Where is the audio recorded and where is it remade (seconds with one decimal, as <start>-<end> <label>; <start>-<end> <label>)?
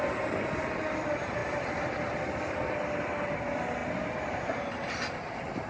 0.0-5.7 remade